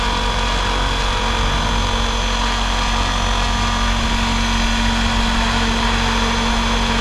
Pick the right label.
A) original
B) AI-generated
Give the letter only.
A